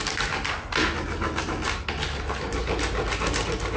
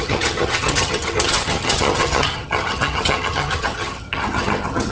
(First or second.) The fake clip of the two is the second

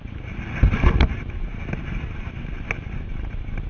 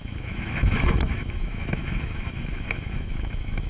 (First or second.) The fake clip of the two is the second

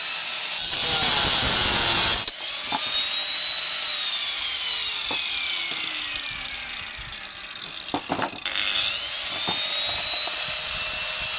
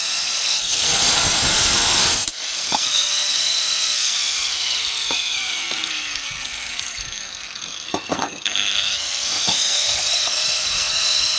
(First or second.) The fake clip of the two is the second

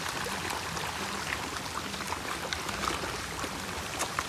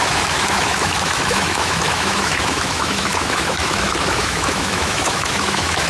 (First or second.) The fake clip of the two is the second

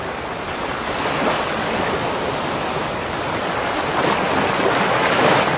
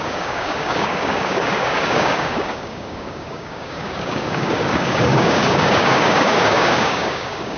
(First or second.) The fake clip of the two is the second